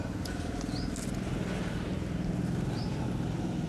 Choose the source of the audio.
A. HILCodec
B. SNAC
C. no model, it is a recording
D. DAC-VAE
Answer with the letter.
C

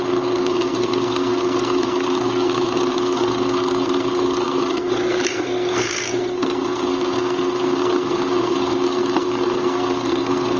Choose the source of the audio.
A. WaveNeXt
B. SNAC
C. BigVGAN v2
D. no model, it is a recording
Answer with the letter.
B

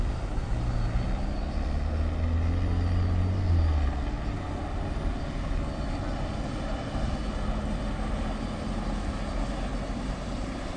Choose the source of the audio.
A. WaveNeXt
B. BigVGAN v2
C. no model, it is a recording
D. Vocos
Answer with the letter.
C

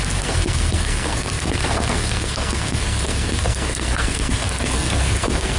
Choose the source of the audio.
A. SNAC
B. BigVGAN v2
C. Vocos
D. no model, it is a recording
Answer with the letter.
A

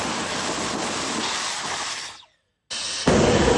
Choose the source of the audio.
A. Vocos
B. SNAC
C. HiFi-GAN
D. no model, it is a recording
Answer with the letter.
D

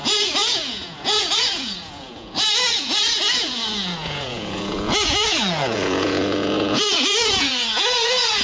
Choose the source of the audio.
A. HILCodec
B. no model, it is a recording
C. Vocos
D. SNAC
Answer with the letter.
C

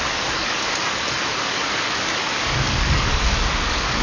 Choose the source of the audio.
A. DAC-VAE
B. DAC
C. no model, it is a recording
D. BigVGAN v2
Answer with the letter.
B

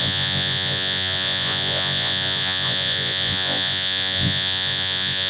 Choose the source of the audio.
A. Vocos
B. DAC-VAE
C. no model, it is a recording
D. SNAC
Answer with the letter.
A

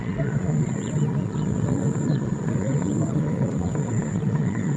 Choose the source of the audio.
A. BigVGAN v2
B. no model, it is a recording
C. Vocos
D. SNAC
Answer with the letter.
C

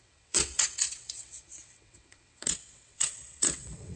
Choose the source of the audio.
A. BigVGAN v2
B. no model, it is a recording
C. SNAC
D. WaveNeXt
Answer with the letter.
D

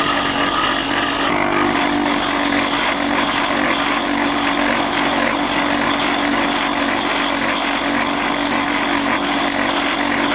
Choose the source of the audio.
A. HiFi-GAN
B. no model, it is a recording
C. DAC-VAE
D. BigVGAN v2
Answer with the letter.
B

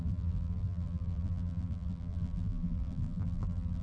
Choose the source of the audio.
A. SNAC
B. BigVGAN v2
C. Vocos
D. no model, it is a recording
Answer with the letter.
B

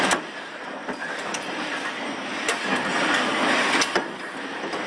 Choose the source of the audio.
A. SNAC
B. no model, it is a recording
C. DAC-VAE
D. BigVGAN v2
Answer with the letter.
D